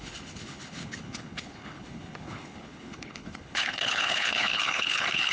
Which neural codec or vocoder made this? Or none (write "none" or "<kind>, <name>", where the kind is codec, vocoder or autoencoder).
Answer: codec, HILCodec